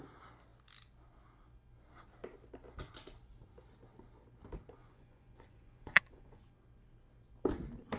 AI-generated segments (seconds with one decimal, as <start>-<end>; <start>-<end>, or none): 4.8-6.5